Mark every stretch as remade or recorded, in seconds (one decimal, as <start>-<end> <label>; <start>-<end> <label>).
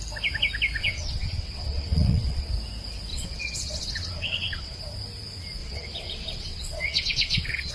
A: 0.0-0.8 recorded; 0.8-2.5 remade; 2.5-3.1 recorded; 3.1-4.8 remade; 4.8-5.6 recorded; 5.6-7.7 remade